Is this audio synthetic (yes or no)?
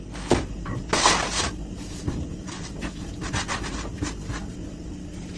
no